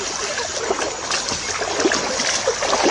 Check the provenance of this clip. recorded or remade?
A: recorded